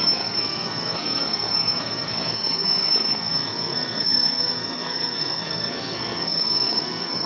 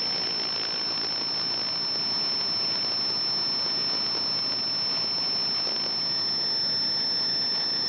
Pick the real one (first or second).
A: second